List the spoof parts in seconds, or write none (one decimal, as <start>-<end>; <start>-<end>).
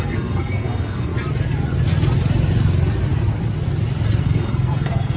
0.0-1.1; 4.2-5.2